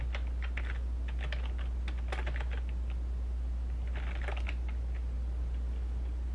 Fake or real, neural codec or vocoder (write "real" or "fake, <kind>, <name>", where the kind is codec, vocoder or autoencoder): real